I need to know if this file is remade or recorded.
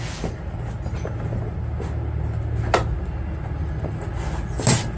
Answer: recorded